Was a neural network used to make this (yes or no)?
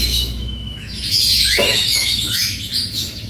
yes